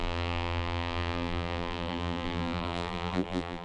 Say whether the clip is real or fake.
fake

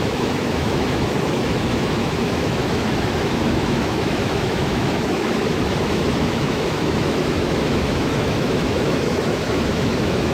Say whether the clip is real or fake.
fake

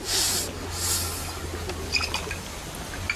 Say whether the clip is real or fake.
real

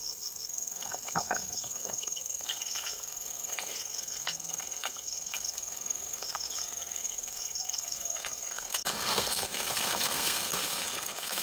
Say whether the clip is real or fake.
fake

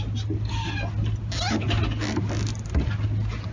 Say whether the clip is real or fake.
real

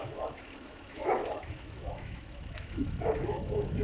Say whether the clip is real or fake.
fake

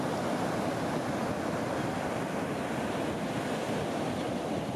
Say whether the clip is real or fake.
real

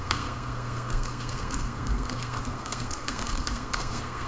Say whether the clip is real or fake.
fake